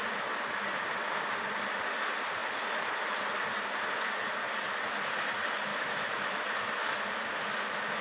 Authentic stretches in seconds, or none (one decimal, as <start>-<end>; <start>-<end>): 0.0-5.7; 6.4-8.0